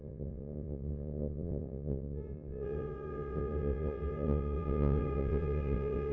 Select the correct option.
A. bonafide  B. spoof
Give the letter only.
B